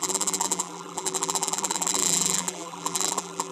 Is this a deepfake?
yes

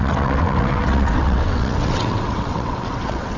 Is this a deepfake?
yes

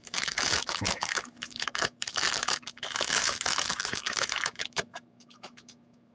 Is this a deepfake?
yes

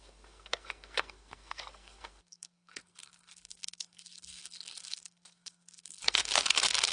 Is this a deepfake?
yes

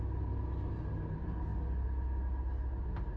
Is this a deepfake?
no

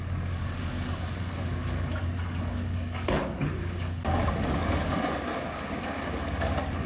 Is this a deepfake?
yes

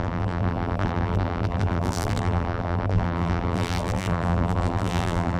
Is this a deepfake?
yes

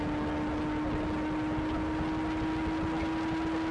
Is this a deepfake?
no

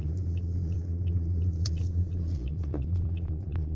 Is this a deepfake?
yes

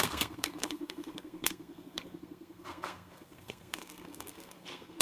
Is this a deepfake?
yes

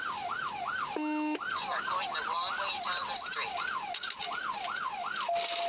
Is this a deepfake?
no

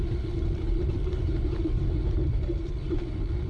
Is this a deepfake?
yes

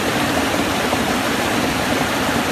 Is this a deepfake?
yes